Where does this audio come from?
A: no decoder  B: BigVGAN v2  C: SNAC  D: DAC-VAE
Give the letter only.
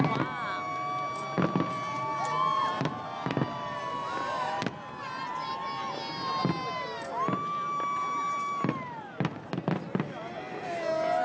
A